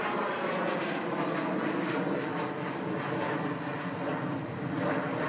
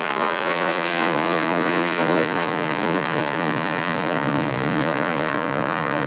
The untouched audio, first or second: first